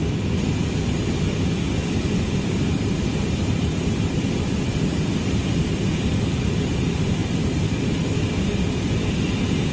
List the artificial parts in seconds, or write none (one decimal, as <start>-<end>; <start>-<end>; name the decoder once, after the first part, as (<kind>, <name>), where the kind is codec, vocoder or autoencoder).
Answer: 1.8-4.4 (vocoder, BigVGAN v2); 7.2-7.9